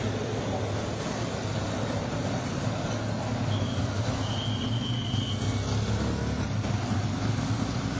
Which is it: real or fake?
real